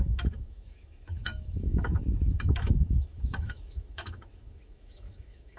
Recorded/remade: remade